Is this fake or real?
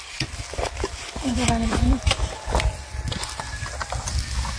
real